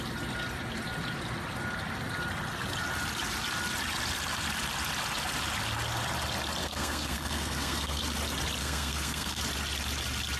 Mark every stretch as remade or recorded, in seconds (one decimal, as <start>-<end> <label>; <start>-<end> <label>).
0.0-6.6 recorded; 6.6-8.0 remade; 8.0-8.6 recorded; 8.6-9.4 remade; 9.4-10.4 recorded